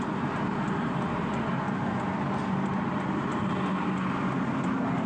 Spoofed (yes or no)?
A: no